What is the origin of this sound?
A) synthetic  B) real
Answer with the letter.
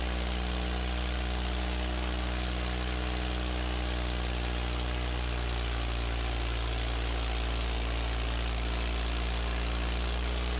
B